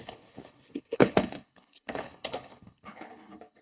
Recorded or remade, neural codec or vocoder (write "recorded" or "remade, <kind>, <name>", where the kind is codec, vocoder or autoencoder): remade, codec, HILCodec